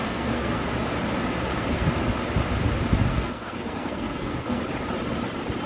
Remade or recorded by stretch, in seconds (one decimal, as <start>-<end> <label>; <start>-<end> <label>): 0.0-0.6 remade; 0.6-1.5 recorded; 1.5-2.0 remade; 2.0-3.1 recorded; 3.1-4.6 remade; 4.6-5.7 recorded